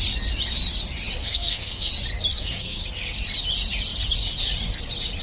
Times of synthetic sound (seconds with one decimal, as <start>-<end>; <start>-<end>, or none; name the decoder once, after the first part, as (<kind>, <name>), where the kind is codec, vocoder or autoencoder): 1.2-1.9 (codec, SNAC); 2.3-2.8